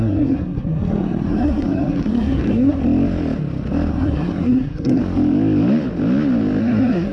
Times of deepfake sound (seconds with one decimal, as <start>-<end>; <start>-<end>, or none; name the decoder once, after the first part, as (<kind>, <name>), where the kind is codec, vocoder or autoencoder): 0.0-2.8 (codec, SNAC); 3.9-5.0; 6.6-7.1